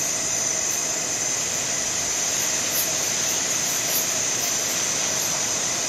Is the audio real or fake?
real